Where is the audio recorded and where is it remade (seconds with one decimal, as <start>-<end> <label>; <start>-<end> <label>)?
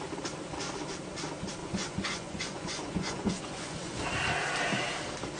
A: 0.0-1.6 recorded; 1.6-4.0 remade; 4.0-5.4 recorded